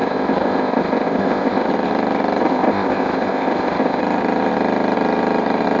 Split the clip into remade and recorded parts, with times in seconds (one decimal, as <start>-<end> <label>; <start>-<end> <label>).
0.0-1.7 remade; 1.7-2.4 recorded; 2.4-4.0 remade; 4.0-5.8 recorded